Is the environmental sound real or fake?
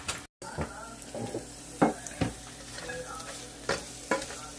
real